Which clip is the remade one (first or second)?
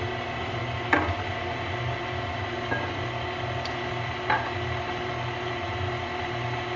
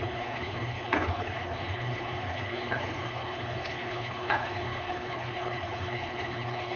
second